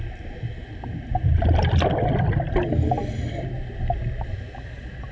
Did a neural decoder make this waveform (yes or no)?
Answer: no